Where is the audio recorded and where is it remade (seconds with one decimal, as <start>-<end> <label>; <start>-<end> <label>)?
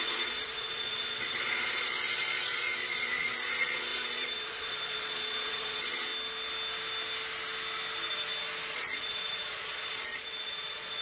0.0-6.1 remade; 6.1-8.7 recorded; 8.7-11.0 remade